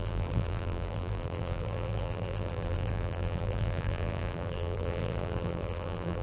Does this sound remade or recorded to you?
remade